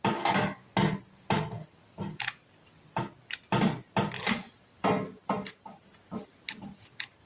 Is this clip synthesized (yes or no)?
no